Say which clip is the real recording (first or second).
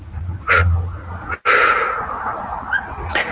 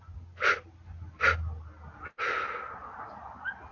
second